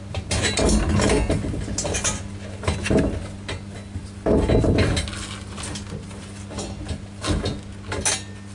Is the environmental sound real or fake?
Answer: real